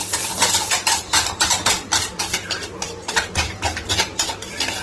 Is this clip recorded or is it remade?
remade